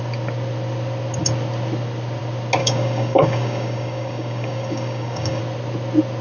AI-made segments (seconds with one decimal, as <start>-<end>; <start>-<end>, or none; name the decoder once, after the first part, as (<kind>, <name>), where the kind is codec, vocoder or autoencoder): 2.6-5.4 (codec, DAC)